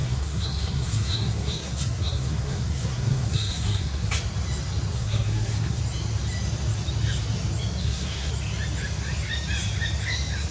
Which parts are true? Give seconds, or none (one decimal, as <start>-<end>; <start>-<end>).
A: 4.1-4.9; 5.8-7.8; 8.3-10.5